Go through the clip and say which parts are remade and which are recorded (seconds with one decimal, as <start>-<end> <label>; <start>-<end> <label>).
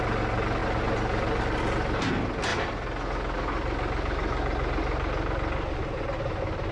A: 0.0-6.7 recorded